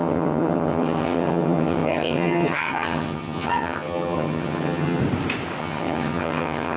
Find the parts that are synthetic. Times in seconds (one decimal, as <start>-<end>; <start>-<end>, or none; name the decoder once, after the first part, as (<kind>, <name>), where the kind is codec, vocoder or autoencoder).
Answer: 0.0-5.0 (vocoder, HiFi-GAN); 5.6-6.8